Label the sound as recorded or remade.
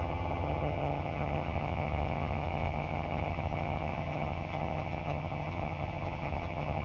remade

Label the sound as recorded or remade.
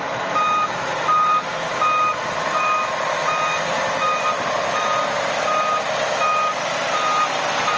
recorded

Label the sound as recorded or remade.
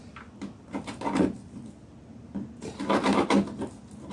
recorded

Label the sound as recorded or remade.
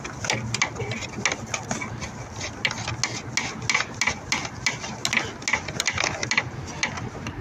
recorded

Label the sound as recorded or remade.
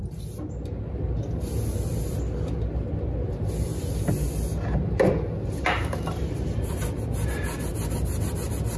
recorded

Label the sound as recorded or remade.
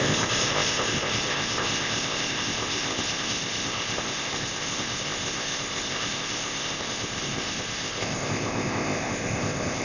remade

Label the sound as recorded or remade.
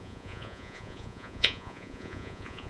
remade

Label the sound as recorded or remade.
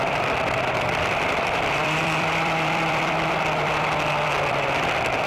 remade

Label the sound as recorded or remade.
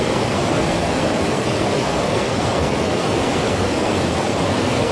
remade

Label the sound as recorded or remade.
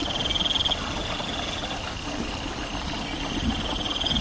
recorded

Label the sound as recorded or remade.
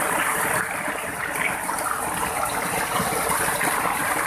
recorded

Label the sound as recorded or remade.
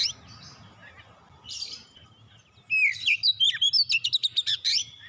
recorded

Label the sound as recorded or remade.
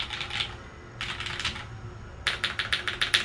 recorded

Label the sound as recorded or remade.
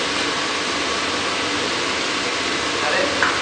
recorded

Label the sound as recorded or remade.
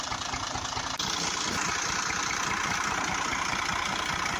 remade